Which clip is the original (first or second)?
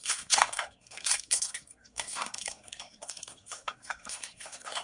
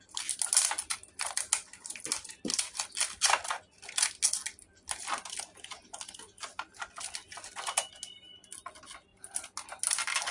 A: second